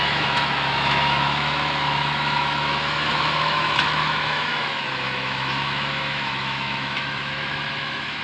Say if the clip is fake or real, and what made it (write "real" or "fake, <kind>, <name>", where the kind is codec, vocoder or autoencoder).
fake, autoencoder, DAC-VAE